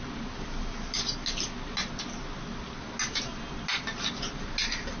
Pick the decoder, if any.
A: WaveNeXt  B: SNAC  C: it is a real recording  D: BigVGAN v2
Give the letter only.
C